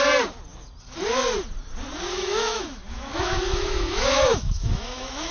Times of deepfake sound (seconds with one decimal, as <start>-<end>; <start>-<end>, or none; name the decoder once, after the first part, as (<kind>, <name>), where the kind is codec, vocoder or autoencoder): 2.1-5.3 (autoencoder, DAC-VAE)